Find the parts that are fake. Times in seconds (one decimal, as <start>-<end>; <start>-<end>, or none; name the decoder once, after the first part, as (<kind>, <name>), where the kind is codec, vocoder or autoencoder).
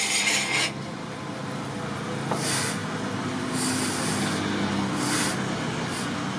none